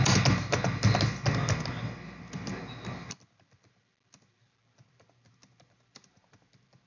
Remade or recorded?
recorded